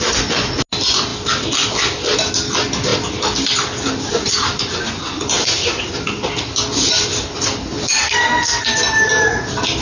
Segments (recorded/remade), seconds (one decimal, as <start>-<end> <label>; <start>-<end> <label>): 0.0-8.0 recorded; 8.0-8.6 remade; 8.6-9.8 recorded